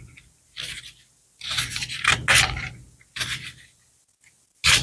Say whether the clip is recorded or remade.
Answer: recorded